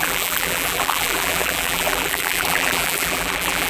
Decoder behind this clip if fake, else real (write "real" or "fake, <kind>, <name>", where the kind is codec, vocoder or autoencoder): fake, vocoder, BigVGAN v2